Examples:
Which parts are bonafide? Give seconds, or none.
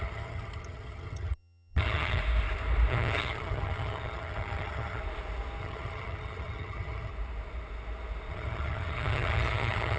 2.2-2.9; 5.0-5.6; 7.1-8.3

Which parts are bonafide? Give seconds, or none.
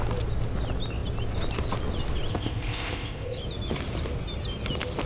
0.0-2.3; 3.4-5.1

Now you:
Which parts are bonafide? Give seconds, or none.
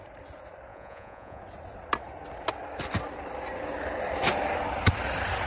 0.0-0.7; 1.4-5.5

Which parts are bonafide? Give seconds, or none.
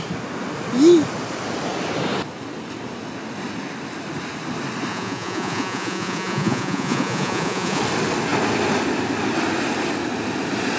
0.0-4.9; 7.8-10.8